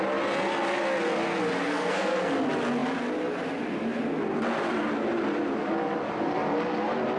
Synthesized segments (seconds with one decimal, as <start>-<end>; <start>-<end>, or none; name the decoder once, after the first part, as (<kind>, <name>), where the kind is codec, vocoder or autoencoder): 1.6-2.3 (codec, SNAC)